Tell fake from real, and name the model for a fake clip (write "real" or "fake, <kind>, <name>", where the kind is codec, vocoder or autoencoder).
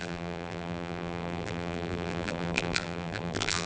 fake, vocoder, BigVGAN v2